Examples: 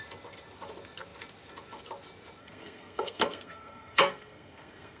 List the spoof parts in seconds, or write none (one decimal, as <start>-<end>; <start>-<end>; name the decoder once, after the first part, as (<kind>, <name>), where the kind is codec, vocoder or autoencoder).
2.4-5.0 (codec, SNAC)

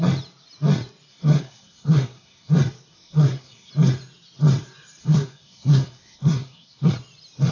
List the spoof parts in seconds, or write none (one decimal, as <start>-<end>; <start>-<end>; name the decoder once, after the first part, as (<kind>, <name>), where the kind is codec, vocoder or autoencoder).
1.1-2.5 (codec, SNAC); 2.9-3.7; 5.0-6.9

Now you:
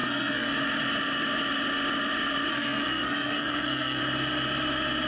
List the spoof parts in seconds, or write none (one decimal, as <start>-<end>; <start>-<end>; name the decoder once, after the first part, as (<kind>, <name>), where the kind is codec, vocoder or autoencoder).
0.0-0.5 (codec, SNAC); 2.5-4.0

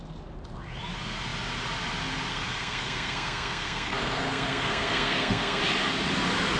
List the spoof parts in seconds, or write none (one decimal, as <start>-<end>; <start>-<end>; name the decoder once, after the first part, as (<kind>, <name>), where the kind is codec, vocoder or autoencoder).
2.3-5.6 (codec, SNAC)

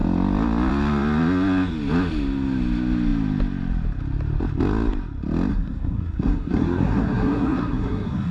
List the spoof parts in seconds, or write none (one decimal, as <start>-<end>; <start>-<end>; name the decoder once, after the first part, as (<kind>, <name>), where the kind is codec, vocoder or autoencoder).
5.5-8.3 (codec, SNAC)